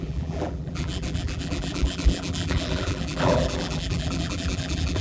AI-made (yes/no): yes